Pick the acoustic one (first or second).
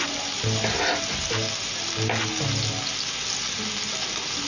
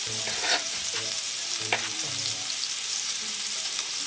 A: first